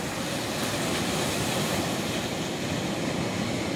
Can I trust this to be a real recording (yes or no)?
yes